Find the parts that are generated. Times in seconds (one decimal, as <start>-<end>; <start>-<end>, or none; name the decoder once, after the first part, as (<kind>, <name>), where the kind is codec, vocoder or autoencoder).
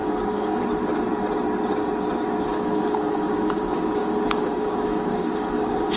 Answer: 0.0-0.6 (codec, DAC); 2.5-6.0